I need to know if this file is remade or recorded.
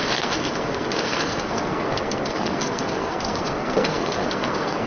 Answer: remade